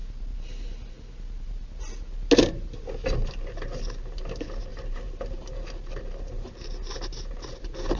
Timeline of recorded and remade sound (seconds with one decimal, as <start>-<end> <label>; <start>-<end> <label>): 0.0-4.7 recorded; 4.7-5.6 remade; 5.6-8.0 recorded